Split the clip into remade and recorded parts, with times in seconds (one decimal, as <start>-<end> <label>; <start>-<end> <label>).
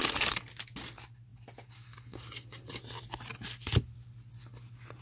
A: 0.0-5.0 recorded